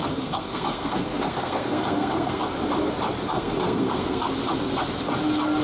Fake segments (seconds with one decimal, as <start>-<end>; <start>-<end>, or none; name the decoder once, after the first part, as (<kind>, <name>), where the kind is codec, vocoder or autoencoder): 0.0-2.4 (codec, SNAC); 3.3-4.3